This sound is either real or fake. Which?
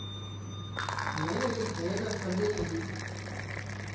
real